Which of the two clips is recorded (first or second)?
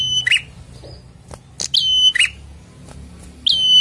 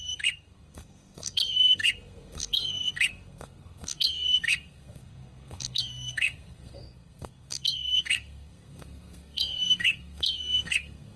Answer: first